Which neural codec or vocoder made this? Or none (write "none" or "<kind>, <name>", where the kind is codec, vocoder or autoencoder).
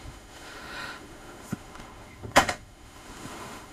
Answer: autoencoder, DAC-VAE